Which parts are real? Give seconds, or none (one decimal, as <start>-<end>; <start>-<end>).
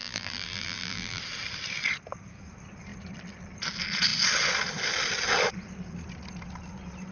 1.2-7.1